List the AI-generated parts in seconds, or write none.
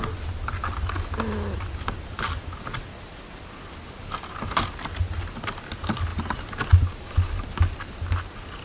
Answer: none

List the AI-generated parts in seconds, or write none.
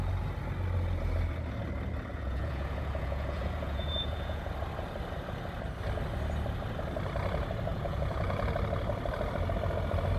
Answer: 2.1-4.5 (vocoder, Vocos); 7.7-8.5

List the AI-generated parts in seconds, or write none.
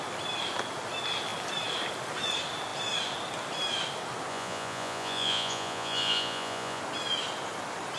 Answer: 4.3-6.8 (vocoder, Vocos)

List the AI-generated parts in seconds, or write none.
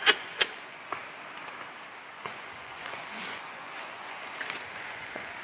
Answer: 0.0-1.0 (vocoder, Vocos); 2.1-5.4